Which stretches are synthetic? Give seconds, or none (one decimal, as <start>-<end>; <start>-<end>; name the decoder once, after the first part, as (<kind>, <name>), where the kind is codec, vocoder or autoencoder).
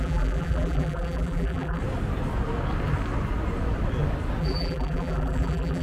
0.0-1.8 (vocoder, BigVGAN v2); 4.4-5.8